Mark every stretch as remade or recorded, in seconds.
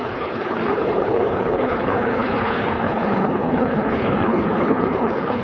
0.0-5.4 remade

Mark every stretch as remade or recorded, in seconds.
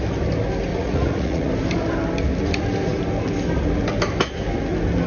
0.0-0.7 recorded; 0.7-1.5 remade; 1.5-5.1 recorded